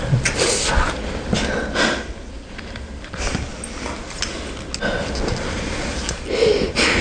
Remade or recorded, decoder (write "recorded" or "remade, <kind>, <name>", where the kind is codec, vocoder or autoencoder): recorded